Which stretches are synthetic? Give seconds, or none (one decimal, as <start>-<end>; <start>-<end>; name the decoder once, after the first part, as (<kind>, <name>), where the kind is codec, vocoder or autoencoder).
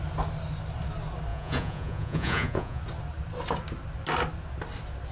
1.3-2.8 (vocoder, Vocos)